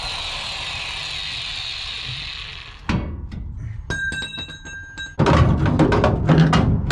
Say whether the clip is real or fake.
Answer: real